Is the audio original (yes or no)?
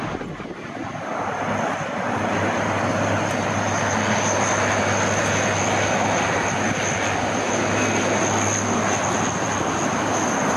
yes